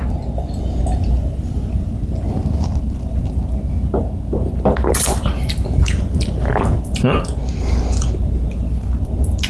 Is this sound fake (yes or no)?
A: no